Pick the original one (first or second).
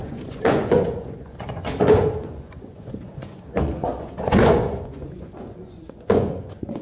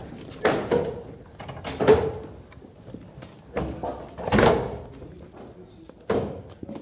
second